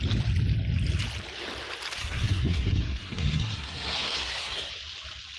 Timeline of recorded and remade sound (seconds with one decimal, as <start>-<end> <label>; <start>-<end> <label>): 0.0-2.0 recorded; 2.0-4.7 remade; 4.7-5.4 recorded